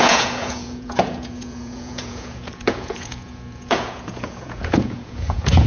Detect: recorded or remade remade